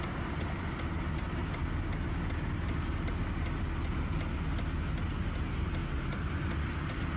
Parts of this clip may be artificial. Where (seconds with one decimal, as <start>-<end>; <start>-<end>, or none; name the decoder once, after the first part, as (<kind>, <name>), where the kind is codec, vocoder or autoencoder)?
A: none